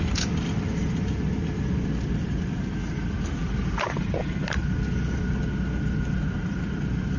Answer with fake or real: real